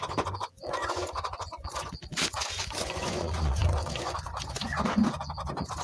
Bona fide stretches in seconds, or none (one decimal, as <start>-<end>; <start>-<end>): none